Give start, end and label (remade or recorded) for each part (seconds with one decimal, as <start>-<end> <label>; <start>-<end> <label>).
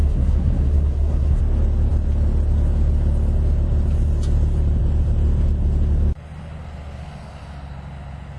0.0-1.4 remade; 1.4-8.4 recorded